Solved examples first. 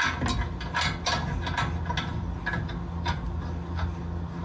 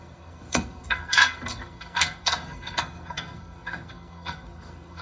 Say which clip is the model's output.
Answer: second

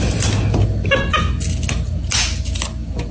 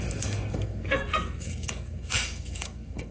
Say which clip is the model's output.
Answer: second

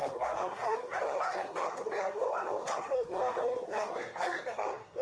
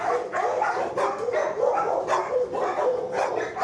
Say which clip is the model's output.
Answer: first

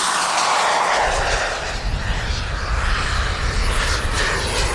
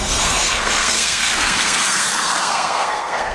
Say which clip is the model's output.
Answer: second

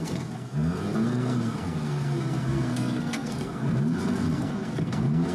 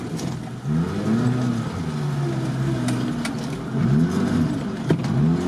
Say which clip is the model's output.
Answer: first